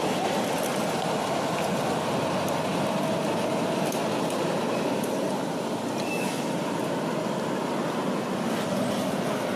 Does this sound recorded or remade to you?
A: recorded